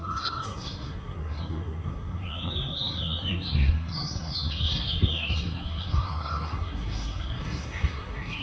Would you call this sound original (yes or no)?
no